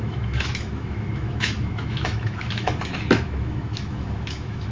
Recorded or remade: remade